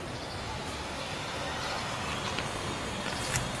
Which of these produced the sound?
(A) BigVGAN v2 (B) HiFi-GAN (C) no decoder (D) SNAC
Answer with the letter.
A